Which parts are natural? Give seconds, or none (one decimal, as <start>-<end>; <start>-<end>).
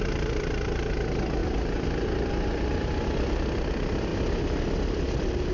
0.0-5.5